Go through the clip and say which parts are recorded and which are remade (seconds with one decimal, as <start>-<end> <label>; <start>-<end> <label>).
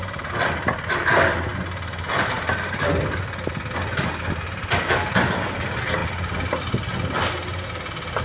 0.0-1.5 remade; 1.5-2.7 recorded; 2.7-6.0 remade; 6.0-8.2 recorded